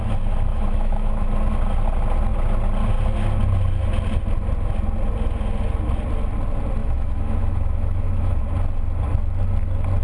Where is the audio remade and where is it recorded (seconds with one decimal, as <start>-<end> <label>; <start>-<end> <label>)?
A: 0.0-0.5 recorded; 0.5-1.3 remade; 1.3-6.8 recorded; 6.8-8.4 remade; 8.4-10.0 recorded